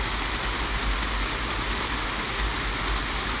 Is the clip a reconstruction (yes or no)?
no